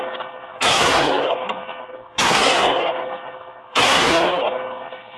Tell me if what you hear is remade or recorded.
remade